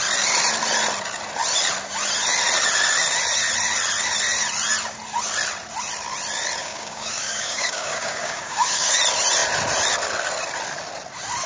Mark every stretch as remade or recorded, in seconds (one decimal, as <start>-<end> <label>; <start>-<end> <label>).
0.0-6.6 recorded; 6.6-8.9 remade; 8.9-11.5 recorded